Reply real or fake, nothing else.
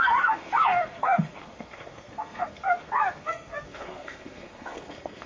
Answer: fake